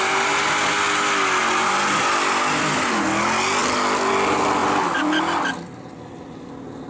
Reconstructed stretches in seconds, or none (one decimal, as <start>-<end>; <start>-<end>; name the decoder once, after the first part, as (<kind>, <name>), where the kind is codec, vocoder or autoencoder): 3.6-4.1 (vocoder, BigVGAN v2); 4.6-5.2